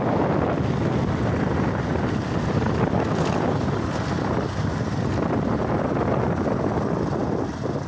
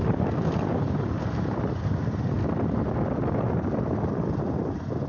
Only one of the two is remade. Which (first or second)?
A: second